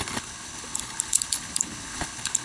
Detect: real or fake fake